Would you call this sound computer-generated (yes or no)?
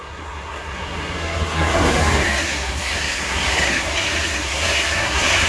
yes